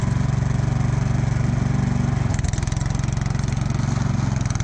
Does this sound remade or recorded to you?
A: recorded